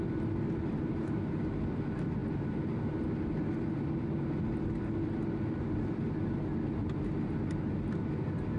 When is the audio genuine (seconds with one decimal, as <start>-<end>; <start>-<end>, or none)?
0.0-8.6